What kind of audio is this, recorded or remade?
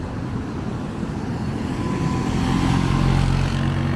recorded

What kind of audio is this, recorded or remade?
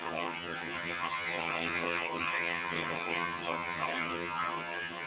remade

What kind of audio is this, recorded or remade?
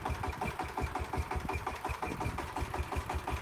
remade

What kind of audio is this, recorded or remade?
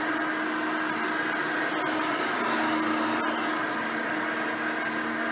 recorded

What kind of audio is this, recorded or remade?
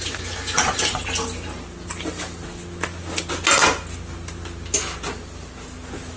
recorded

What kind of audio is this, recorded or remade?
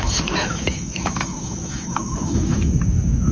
remade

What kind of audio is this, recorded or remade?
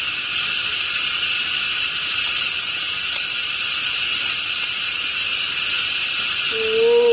recorded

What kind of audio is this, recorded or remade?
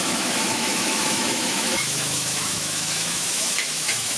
remade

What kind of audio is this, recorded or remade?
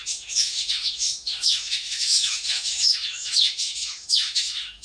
remade